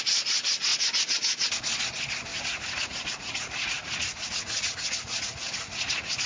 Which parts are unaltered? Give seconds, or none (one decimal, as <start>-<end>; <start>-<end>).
0.0-2.3